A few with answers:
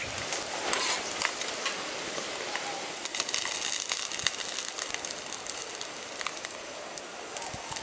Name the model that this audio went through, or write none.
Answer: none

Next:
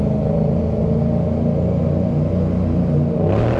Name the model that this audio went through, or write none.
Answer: none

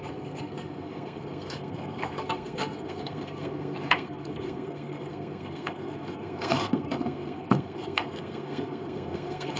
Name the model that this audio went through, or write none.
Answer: codec, SNAC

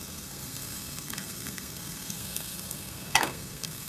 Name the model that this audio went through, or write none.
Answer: codec, SNAC